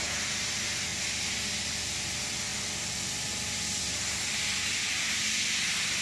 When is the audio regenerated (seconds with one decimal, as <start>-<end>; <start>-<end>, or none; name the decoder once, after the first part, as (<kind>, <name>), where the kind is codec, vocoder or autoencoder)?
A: 0.9-1.6 (vocoder, BigVGAN v2); 2.5-3.8